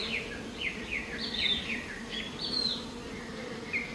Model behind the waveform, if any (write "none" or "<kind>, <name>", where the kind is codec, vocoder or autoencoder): vocoder, BigVGAN v2